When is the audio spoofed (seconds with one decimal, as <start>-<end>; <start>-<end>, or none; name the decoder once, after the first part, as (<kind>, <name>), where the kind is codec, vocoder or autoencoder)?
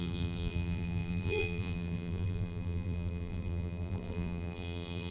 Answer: 0.0-5.1 (vocoder, BigVGAN v2)